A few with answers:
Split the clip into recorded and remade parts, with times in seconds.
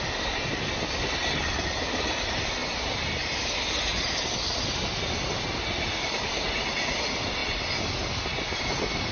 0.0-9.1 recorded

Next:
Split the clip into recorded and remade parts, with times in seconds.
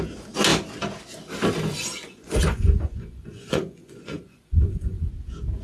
0.0-1.7 recorded; 1.7-5.1 remade; 5.1-5.6 recorded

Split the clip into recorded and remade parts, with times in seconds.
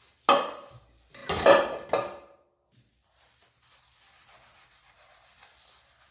0.0-6.1 recorded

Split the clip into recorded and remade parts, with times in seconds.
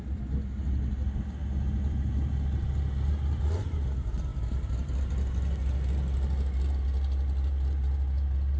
0.0-8.6 recorded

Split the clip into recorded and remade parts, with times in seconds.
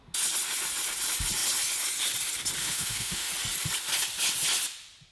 0.0-2.6 recorded; 2.6-3.3 remade; 3.3-5.1 recorded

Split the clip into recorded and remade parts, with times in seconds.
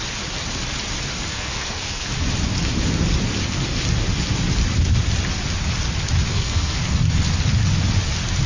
0.0-1.3 recorded; 1.3-2.1 remade; 2.1-6.3 recorded; 6.3-6.8 remade; 6.8-8.5 recorded